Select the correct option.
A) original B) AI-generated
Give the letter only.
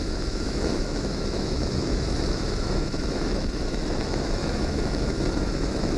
B